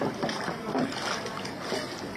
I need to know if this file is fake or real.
real